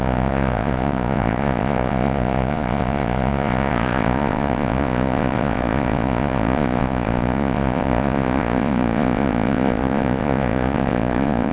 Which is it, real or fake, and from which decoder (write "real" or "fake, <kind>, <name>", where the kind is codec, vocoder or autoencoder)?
fake, vocoder, Vocos